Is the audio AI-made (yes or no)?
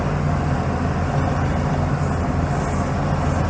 no